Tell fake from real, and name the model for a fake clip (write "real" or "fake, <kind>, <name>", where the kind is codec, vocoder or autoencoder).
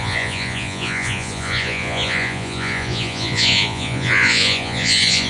fake, vocoder, Vocos